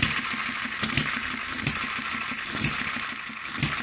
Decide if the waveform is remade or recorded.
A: recorded